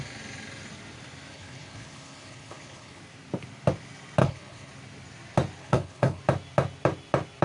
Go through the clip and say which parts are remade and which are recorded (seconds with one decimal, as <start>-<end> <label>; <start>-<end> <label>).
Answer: 0.0-1.3 recorded; 1.3-3.0 remade; 3.0-4.2 recorded; 4.2-4.7 remade; 4.7-5.6 recorded; 5.6-6.2 remade; 6.2-7.4 recorded